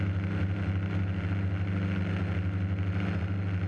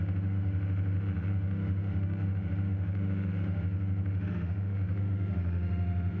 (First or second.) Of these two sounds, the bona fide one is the first